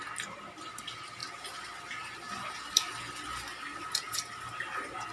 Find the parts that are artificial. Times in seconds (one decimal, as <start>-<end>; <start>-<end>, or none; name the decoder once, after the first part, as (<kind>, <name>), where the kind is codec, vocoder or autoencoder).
none